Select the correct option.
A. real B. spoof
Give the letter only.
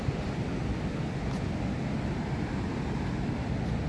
A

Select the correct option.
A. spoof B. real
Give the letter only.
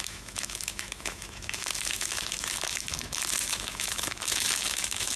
A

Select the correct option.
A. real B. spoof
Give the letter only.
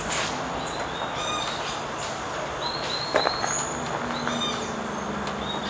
A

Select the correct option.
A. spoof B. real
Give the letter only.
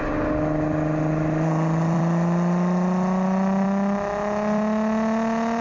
B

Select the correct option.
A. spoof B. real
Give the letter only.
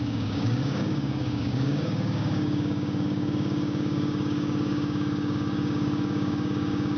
A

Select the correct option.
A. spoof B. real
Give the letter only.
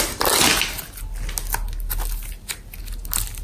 B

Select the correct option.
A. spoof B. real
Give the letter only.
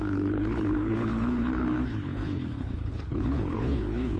A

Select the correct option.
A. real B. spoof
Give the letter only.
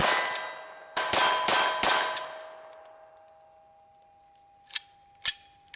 A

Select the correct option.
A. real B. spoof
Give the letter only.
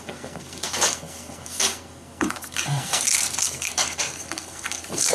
B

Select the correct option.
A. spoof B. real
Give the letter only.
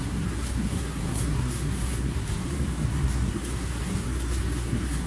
A